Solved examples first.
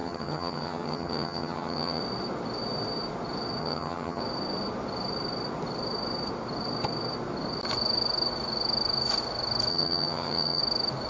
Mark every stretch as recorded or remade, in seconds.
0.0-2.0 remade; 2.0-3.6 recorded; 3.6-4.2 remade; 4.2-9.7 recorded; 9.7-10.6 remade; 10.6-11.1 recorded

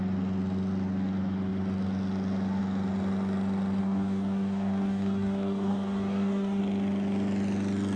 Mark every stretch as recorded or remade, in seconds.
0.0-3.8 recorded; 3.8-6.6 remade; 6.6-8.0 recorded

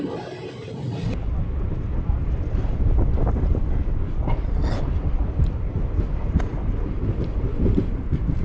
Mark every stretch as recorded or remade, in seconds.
0.0-8.4 recorded

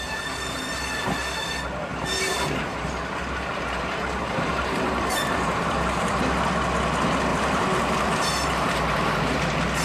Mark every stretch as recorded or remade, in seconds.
0.0-1.9 recorded; 1.9-6.2 remade; 6.2-7.3 recorded; 7.3-9.4 remade; 9.4-9.8 recorded

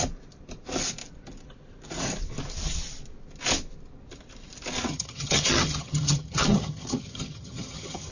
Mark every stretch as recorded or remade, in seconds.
0.0-4.9 recorded; 4.9-8.1 remade

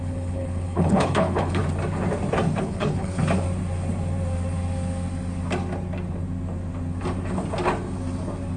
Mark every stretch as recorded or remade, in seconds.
0.0-1.6 remade; 1.6-2.6 recorded; 2.6-3.2 remade; 3.2-8.6 recorded

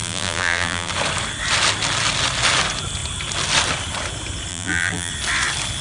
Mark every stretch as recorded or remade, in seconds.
0.0-0.9 remade; 0.9-4.5 recorded; 4.5-5.1 remade; 5.1-5.8 recorded

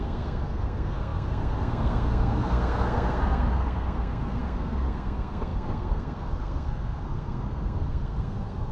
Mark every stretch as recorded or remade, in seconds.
0.0-8.7 remade